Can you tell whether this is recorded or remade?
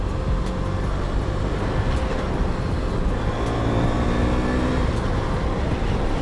recorded